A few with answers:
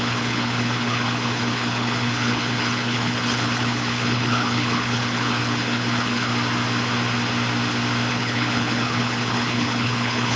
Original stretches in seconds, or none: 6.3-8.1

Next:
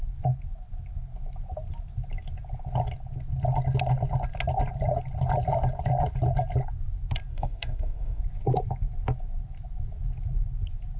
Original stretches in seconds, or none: 0.0-7.3; 8.2-11.0

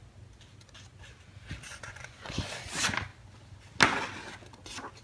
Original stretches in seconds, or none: 0.0-1.7; 2.5-5.0

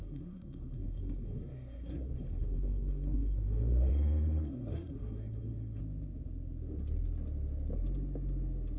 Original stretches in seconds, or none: 5.8-8.8